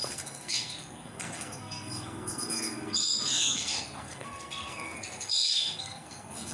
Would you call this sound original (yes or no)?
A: no